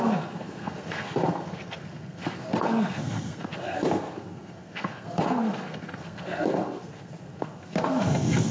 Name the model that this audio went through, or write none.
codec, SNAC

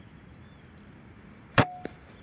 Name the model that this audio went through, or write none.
none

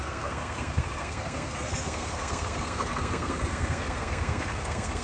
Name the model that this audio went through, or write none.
codec, SNAC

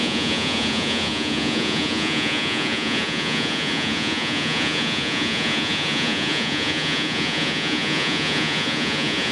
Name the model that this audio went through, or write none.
vocoder, Vocos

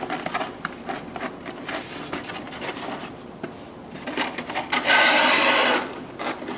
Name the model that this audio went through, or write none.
none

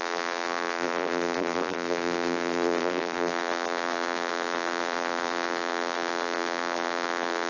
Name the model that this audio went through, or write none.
vocoder, BigVGAN v2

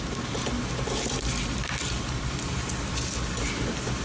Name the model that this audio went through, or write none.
none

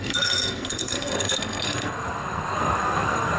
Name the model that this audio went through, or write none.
codec, SNAC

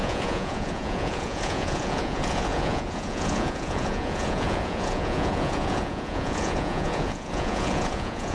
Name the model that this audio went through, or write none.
vocoder, Vocos